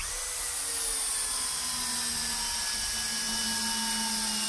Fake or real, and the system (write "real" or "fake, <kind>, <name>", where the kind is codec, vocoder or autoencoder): real